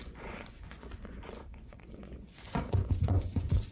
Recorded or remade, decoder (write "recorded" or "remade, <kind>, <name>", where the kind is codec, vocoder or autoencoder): remade, vocoder, Vocos